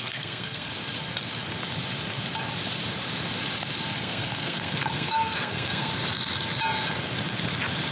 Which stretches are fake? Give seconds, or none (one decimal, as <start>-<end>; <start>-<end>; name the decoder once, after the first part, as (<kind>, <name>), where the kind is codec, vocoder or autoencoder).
0.0-0.7 (codec, SNAC); 4.0-5.9